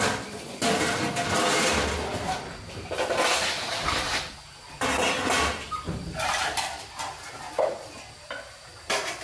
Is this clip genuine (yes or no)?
yes